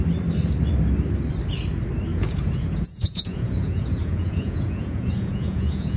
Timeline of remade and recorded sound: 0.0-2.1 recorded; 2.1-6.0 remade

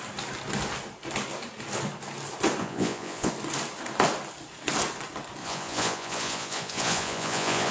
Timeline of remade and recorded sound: 0.0-2.6 recorded; 2.6-3.3 remade; 3.3-5.4 recorded; 5.4-7.7 remade

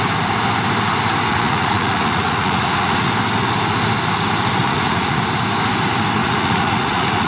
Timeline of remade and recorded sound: 0.0-1.3 recorded; 1.3-3.1 remade; 3.1-4.6 recorded; 4.6-5.2 remade; 5.2-6.2 recorded; 6.2-7.3 remade

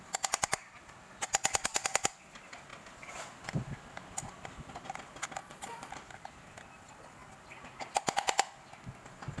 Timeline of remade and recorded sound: 0.0-5.4 recorded; 5.4-5.9 remade; 5.9-9.4 recorded